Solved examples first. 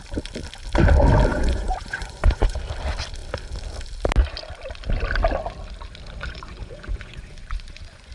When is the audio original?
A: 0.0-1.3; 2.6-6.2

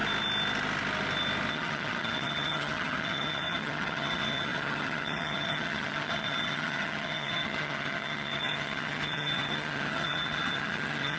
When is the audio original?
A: 0.0-1.5

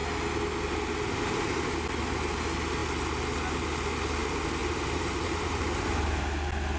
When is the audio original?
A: 0.0-4.6; 5.6-6.8

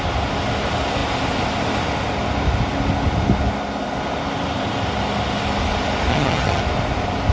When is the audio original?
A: 0.0-6.1; 6.6-7.3

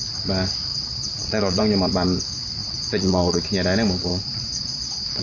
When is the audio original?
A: 0.0-0.7; 1.6-2.6; 3.4-4.1

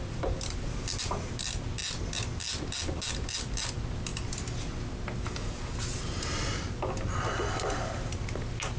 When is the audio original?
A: 0.0-8.8